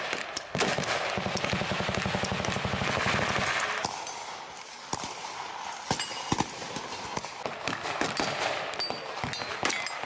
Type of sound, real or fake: real